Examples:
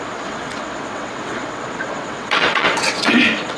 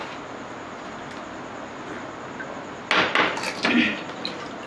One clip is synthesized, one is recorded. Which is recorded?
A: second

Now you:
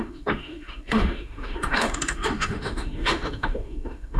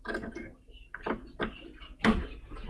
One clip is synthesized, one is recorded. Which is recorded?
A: second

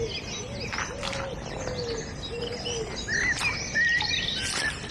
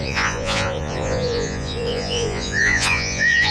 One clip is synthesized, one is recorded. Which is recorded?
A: first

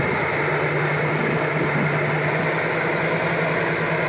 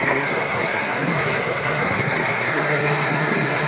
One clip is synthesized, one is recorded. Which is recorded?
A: first